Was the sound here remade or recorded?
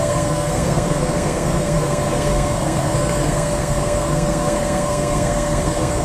remade